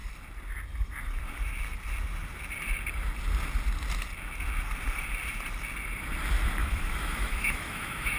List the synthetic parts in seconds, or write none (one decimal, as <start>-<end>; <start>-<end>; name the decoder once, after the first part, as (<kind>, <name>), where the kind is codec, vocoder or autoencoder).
6.6-8.2 (autoencoder, DAC-VAE)